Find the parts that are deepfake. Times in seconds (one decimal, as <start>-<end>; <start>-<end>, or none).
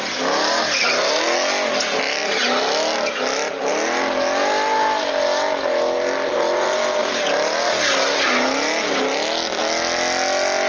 none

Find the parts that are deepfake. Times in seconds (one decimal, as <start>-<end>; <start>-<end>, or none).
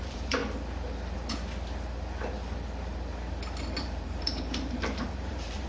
0.0-0.4; 3.8-5.7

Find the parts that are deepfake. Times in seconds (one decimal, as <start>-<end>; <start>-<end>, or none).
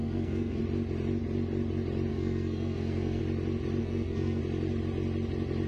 0.0-0.6; 2.1-3.2; 3.8-4.4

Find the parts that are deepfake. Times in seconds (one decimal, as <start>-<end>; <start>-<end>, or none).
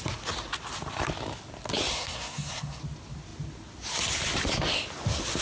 1.9-2.8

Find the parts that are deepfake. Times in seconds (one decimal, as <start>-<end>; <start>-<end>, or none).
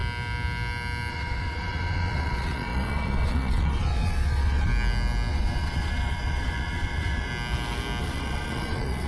1.1-4.7; 5.3-7.3; 8.0-9.1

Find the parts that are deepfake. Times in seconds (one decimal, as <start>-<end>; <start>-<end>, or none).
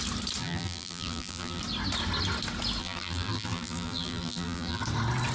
0.4-1.6; 2.8-4.8